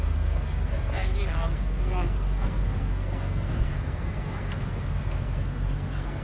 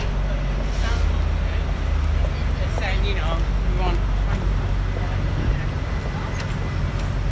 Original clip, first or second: second